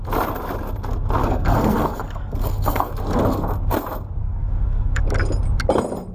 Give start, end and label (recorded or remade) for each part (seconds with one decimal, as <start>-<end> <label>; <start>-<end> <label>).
0.0-1.2 recorded; 1.2-2.9 remade; 2.9-4.2 recorded; 4.2-5.0 remade; 5.0-6.1 recorded

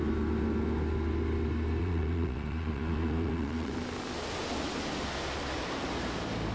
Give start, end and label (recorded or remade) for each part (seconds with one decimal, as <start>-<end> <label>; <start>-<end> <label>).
0.0-1.8 recorded; 1.8-3.7 remade; 3.7-6.5 recorded

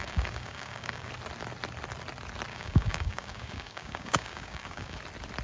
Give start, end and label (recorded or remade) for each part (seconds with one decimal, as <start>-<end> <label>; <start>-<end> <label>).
0.0-1.1 remade; 1.1-2.5 recorded; 2.5-5.0 remade; 5.0-5.4 recorded

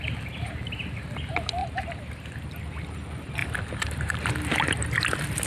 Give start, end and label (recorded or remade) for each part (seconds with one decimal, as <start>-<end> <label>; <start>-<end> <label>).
0.0-1.6 recorded; 1.6-2.1 remade; 2.1-3.4 recorded; 3.4-4.3 remade; 4.3-5.5 recorded

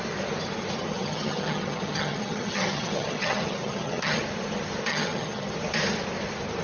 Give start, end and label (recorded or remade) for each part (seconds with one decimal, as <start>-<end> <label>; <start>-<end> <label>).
0.0-0.9 recorded; 0.9-4.2 remade; 4.2-4.9 recorded; 4.9-5.5 remade; 5.5-6.6 recorded